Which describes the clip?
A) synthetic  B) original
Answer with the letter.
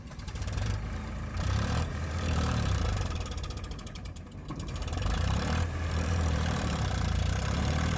A